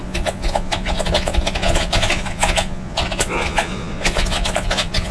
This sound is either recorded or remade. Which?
remade